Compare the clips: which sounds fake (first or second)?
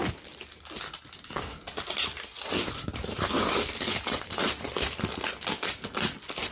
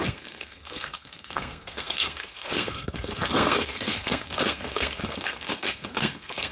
second